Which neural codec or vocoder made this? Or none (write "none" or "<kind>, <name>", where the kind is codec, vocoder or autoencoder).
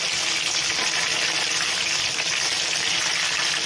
none